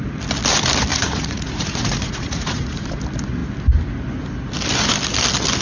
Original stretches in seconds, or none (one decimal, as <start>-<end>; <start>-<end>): 0.0-0.9; 3.0-5.6